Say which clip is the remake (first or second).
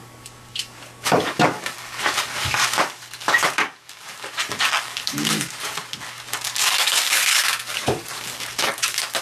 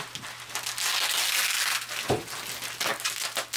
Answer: first